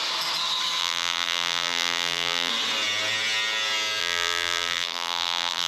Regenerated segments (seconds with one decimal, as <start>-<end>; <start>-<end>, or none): 0.8-2.5; 4.0-5.7